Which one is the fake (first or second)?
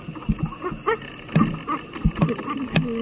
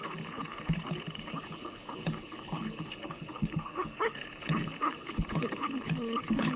second